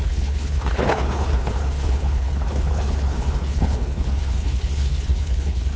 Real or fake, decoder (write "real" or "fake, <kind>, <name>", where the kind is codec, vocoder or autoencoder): fake, codec, HILCodec